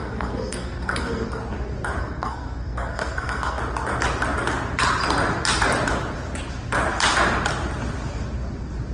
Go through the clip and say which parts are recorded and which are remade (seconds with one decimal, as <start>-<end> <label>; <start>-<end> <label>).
0.0-1.4 remade; 1.4-2.0 recorded; 2.0-3.6 remade; 3.6-8.9 recorded

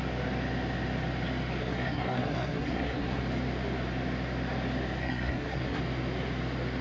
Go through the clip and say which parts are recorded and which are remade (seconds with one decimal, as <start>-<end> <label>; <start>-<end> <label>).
0.0-1.6 recorded; 1.6-3.2 remade; 3.2-5.0 recorded; 5.0-5.8 remade; 5.8-6.8 recorded

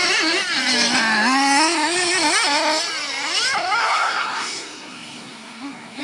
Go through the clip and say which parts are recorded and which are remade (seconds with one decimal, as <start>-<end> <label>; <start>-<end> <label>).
0.0-3.8 recorded; 3.8-6.0 remade

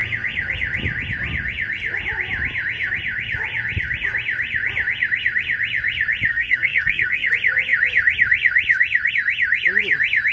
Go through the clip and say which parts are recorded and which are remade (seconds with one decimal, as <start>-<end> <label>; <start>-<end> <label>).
0.0-6.3 recorded; 6.3-7.3 remade; 7.3-10.3 recorded